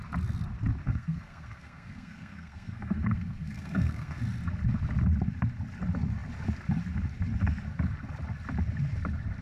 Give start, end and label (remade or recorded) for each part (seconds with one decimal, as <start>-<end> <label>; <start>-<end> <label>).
0.0-0.8 recorded; 0.8-4.2 remade; 4.2-9.4 recorded